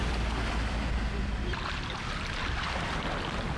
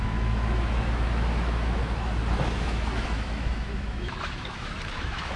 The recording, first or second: first